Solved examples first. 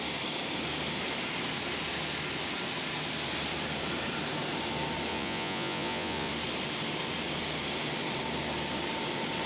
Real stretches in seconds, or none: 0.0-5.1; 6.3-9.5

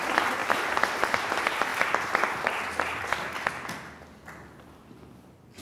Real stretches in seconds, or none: 0.0-5.6